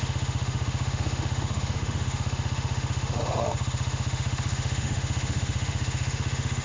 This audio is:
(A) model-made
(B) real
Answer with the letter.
A